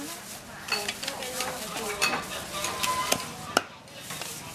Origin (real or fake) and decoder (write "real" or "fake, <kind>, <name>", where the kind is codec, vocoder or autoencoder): real